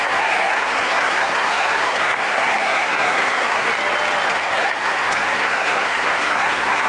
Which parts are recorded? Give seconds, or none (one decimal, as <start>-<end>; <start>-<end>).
3.7-4.3